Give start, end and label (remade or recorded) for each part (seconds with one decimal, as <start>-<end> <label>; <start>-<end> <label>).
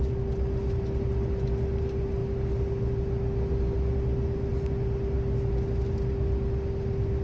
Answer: 0.0-7.2 recorded